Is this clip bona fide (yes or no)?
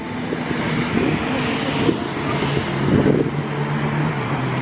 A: yes